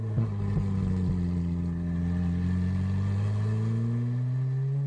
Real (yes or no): yes